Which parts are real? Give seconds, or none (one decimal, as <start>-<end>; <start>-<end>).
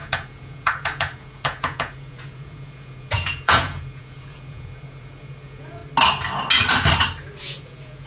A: 5.8-7.4